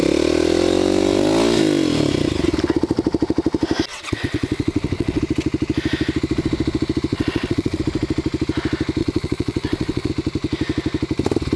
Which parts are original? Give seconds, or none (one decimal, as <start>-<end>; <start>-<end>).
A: 0.0-3.9; 5.2-7.1; 7.8-9.0; 10.1-11.6